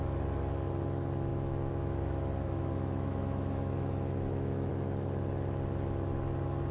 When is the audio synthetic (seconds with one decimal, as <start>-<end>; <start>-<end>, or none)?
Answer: 1.3-4.7